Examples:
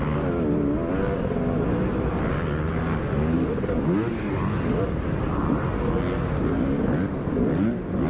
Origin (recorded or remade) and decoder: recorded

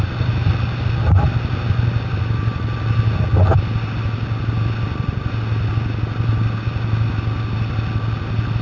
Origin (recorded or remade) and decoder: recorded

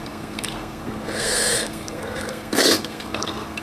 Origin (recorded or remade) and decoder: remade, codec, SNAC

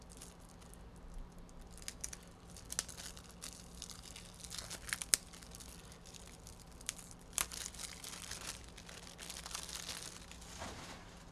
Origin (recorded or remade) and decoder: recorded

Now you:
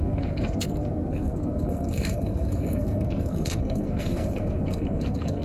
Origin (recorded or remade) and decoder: remade, codec, SNAC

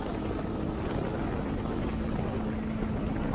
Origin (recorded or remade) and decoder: recorded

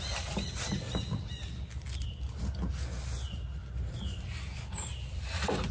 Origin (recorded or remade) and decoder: recorded